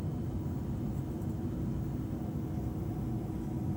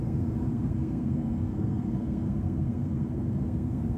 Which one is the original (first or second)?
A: first